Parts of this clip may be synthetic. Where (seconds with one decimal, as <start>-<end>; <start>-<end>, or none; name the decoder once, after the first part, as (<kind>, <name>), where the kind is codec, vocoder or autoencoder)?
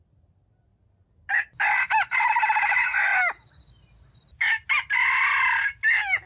none